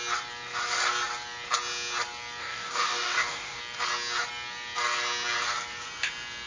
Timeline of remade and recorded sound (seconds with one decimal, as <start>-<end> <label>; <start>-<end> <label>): 0.0-2.4 recorded; 2.4-3.6 remade; 3.6-6.5 recorded